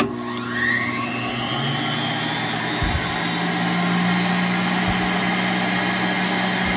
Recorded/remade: recorded